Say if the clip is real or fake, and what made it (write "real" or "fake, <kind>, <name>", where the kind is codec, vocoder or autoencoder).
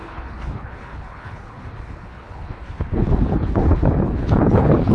fake, codec, HILCodec